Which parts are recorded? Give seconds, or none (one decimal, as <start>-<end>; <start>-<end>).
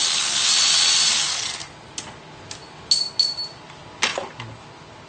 0.0-5.1